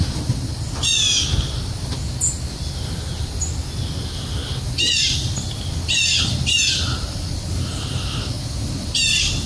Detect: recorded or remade recorded